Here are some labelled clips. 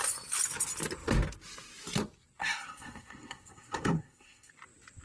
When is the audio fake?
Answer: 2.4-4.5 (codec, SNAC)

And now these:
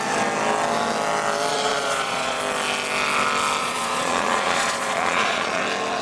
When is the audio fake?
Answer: 1.5-2.4 (vocoder, Vocos); 3.6-5.6